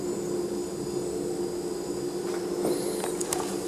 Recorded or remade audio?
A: recorded